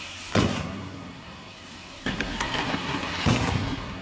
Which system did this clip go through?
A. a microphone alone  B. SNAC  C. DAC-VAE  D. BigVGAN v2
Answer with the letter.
B